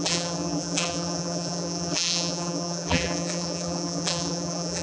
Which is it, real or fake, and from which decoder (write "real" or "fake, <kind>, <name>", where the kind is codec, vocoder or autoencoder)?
fake, vocoder, BigVGAN v2